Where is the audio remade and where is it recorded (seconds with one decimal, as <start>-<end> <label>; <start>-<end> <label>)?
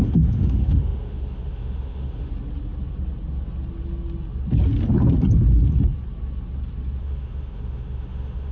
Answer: 0.0-2.3 remade; 2.3-7.0 recorded; 7.0-8.5 remade